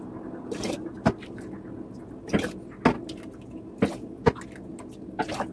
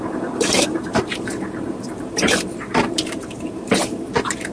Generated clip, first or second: second